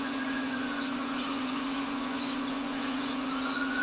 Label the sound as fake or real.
fake